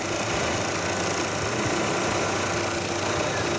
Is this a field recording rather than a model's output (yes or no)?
yes